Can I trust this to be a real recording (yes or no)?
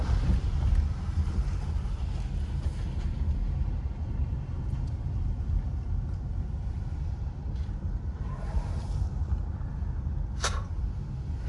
yes